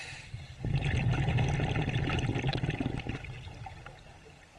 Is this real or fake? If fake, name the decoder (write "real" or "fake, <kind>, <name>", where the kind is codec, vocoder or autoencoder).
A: real